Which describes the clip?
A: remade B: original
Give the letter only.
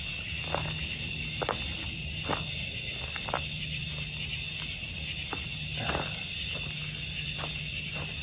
B